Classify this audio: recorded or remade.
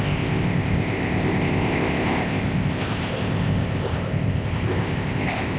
remade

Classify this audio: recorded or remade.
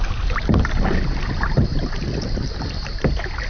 recorded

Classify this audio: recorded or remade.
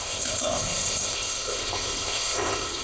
remade